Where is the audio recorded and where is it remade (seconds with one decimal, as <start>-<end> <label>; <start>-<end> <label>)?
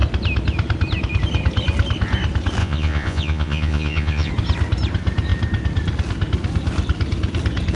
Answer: 0.0-2.6 recorded; 2.6-4.3 remade; 4.3-7.8 recorded